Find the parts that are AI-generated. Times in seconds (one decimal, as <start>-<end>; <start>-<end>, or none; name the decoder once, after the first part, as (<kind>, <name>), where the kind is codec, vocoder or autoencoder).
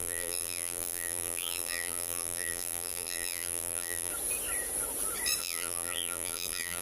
0.0-4.1 (vocoder, BigVGAN v2); 5.4-6.8